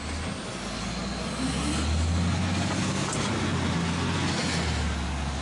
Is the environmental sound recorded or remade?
recorded